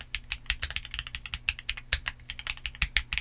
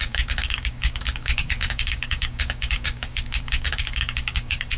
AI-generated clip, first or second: second